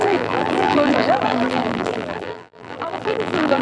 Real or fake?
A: fake